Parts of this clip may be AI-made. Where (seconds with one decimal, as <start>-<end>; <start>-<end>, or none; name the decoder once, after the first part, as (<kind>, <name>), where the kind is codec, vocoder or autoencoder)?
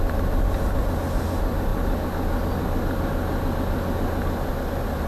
none